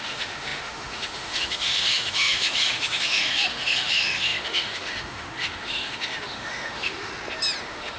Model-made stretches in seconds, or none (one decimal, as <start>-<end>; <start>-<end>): 0.0-7.1; 7.6-8.0